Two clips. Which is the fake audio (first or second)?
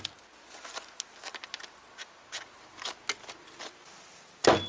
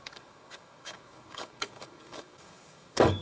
second